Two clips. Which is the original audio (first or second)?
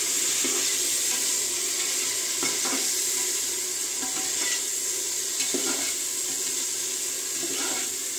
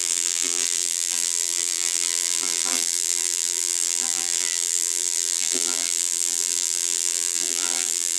first